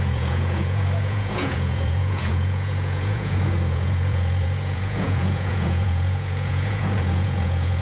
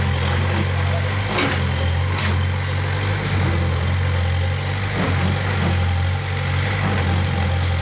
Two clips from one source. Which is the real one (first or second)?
second